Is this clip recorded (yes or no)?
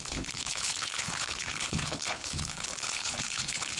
no